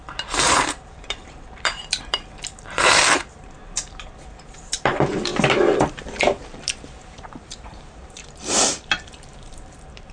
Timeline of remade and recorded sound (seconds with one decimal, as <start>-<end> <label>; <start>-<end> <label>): 0.0-5.3 remade; 5.3-5.9 recorded; 5.9-10.1 remade